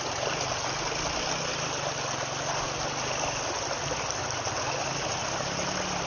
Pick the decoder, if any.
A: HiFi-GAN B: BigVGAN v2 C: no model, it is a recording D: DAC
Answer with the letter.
C